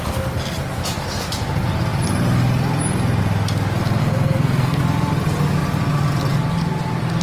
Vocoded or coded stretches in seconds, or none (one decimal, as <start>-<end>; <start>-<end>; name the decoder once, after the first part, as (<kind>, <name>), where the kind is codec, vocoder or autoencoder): 4.0-4.8 (codec, SNAC)